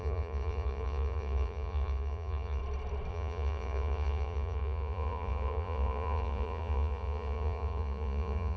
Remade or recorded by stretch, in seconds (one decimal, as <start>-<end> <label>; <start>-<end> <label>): 0.0-2.6 remade; 2.6-3.1 recorded; 3.1-8.6 remade